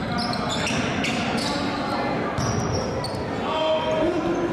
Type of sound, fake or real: real